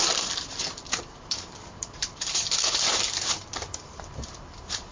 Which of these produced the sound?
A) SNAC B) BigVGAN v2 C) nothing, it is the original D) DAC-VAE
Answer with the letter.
B